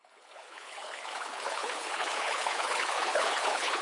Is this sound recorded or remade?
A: remade